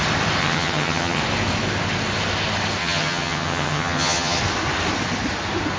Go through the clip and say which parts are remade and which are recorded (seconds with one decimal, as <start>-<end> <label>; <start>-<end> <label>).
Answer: 0.0-0.4 recorded; 0.4-1.2 remade; 1.2-2.8 recorded; 2.8-4.4 remade; 4.4-5.8 recorded